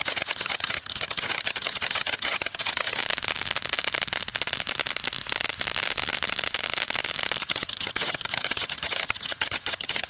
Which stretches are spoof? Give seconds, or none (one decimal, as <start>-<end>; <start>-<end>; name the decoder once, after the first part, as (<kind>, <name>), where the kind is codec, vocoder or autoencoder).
0.0-3.0 (vocoder, HiFi-GAN); 7.4-10.1